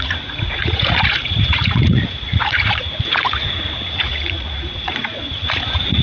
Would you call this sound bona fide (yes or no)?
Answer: no